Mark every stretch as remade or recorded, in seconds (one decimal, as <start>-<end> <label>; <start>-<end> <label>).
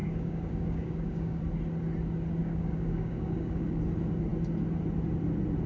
0.0-1.4 remade; 1.4-2.4 recorded; 2.4-3.8 remade; 3.8-5.7 recorded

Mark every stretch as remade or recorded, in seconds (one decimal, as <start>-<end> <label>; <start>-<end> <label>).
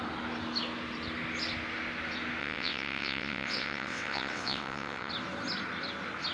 0.0-2.4 recorded; 2.4-5.1 remade; 5.1-6.3 recorded